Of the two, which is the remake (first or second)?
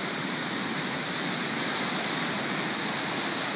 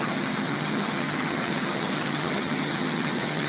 second